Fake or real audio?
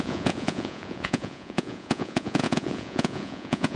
fake